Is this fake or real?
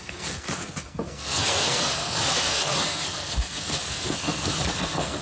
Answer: fake